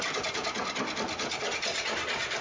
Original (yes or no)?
yes